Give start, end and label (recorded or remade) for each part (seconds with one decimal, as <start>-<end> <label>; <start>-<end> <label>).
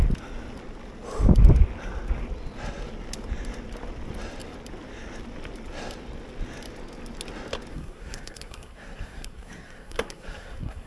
0.0-7.7 recorded; 7.7-10.9 remade